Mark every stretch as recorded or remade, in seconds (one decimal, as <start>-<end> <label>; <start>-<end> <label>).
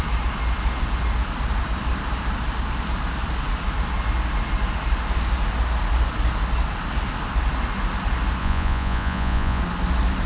0.0-8.4 recorded; 8.4-9.6 remade; 9.6-10.3 recorded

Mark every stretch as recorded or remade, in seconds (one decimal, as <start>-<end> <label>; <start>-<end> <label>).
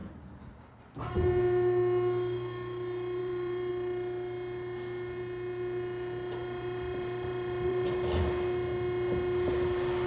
0.0-3.2 recorded; 3.2-3.7 remade; 3.7-6.4 recorded; 6.4-8.2 remade; 8.2-10.1 recorded